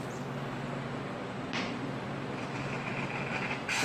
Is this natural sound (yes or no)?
yes